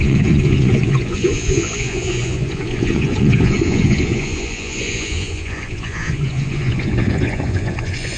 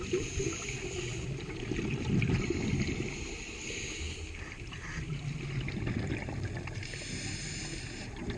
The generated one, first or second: first